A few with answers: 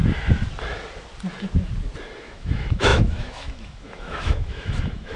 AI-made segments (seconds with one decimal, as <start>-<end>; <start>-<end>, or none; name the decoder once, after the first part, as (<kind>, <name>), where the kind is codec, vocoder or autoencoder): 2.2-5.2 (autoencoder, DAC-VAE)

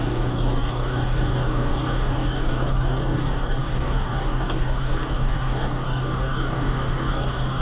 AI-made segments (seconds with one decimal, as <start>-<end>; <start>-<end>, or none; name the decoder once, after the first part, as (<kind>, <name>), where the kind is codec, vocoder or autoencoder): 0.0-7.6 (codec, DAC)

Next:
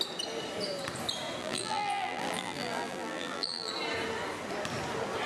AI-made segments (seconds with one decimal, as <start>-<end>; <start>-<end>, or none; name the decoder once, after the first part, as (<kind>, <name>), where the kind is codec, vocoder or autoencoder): 1.4-3.7 (vocoder, BigVGAN v2)

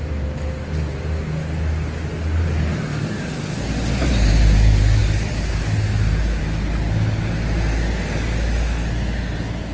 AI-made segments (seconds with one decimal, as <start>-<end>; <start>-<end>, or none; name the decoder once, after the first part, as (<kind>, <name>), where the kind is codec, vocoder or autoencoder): none

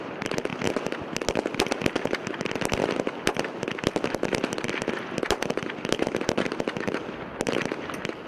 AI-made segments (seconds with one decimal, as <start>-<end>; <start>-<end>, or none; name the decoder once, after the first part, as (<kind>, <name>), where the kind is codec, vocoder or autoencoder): none